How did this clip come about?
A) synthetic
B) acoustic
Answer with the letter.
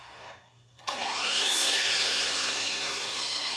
A